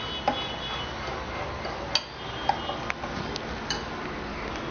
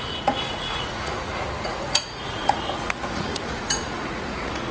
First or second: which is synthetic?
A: second